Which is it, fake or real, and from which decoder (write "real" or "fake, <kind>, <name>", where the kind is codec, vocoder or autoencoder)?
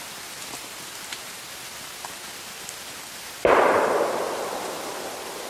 real